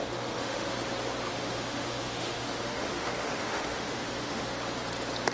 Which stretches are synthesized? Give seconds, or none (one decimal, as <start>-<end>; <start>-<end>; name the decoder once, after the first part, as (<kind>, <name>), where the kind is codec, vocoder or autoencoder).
0.0-0.8 (autoencoder, DAC-VAE); 1.3-4.5